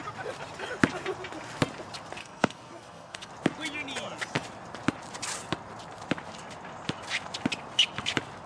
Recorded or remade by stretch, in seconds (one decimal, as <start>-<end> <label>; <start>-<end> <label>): 0.0-2.2 recorded; 2.2-3.3 remade; 3.3-8.5 recorded